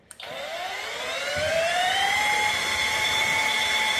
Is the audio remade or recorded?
remade